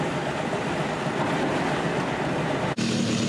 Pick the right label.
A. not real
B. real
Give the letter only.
B